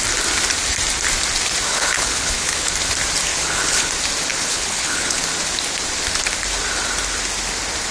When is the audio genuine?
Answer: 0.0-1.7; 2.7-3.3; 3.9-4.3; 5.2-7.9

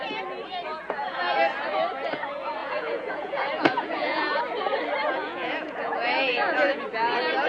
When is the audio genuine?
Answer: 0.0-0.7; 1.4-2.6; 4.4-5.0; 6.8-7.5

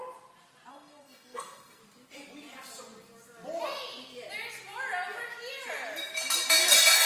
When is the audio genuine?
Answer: 0.0-0.7; 1.8-7.1

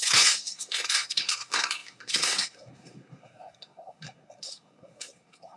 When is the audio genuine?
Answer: none

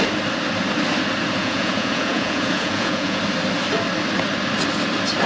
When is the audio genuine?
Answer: 0.0-1.4; 3.2-5.3

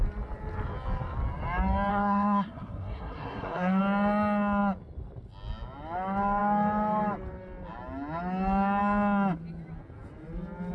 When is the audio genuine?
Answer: 0.0-1.9; 3.8-10.7

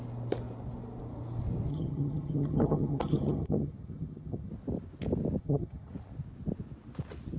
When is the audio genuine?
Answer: 0.0-1.7; 4.5-5.4; 5.9-7.4

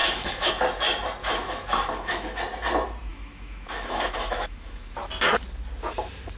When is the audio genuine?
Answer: 0.5-1.2; 2.4-3.1; 5.1-6.4